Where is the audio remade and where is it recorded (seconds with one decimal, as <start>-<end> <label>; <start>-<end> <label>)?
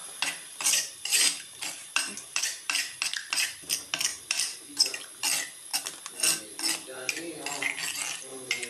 0.0-2.8 remade; 2.8-4.1 recorded; 4.1-4.7 remade; 4.7-8.7 recorded